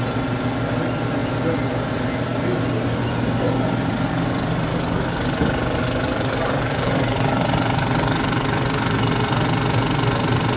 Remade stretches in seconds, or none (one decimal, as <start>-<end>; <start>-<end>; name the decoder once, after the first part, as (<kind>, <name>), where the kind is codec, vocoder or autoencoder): 4.7-9.1 (codec, DAC)